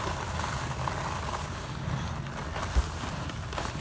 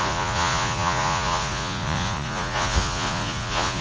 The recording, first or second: first